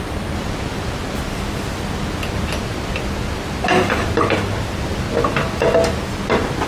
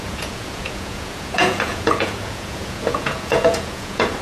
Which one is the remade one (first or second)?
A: second